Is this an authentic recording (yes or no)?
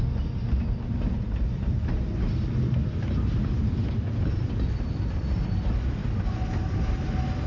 yes